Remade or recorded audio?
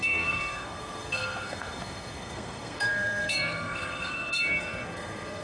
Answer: remade